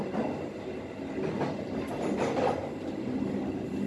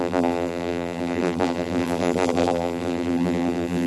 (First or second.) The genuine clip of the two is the first